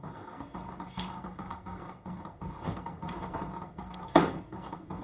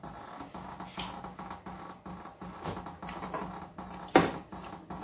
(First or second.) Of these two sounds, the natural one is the second